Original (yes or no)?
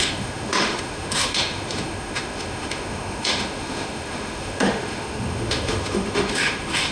no